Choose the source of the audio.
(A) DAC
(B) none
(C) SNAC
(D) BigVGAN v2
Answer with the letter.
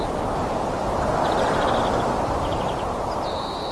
B